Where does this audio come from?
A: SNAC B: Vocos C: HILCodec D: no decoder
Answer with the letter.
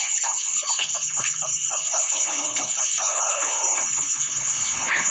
C